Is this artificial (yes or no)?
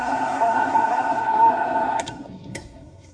yes